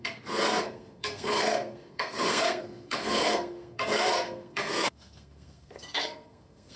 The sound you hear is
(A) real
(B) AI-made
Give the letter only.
B